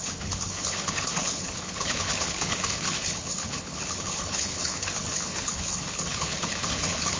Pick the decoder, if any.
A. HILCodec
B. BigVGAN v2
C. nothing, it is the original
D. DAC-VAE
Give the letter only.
A